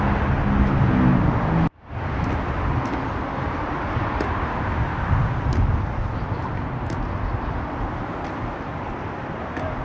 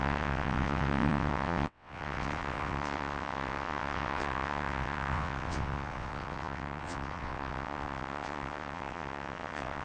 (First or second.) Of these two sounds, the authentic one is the first